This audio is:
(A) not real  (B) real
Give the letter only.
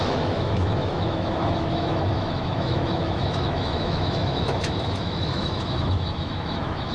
A